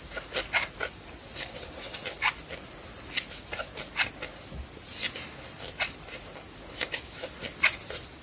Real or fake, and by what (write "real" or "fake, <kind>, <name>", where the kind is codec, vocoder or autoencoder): real